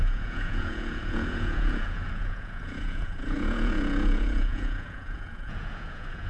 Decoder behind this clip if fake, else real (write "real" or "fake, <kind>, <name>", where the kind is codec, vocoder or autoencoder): fake, vocoder, Vocos